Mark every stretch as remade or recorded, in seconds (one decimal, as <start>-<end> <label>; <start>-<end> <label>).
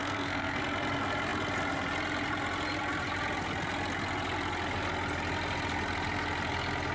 0.0-0.6 remade; 0.6-6.9 recorded